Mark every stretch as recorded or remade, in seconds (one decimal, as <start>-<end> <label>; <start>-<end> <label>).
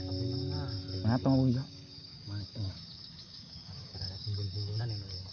0.0-1.6 recorded; 1.6-4.8 remade; 4.8-5.3 recorded